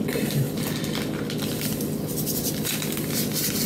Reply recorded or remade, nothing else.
recorded